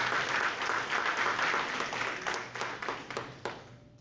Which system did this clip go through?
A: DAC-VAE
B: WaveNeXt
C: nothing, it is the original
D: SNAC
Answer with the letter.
C